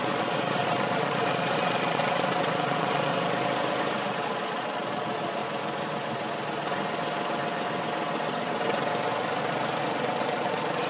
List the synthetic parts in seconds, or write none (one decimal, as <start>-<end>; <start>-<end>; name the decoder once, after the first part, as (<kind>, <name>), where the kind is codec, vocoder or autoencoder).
0.0-3.1 (vocoder, Vocos); 4.2-5.4; 9.8-10.9